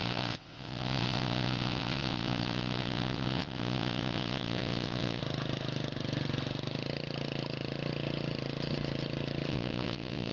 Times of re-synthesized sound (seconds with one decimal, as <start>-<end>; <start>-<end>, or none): 0.0-5.2; 9.5-10.3